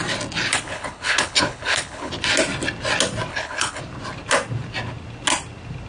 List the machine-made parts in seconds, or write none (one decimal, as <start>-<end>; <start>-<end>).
0.5-2.1; 3.3-3.8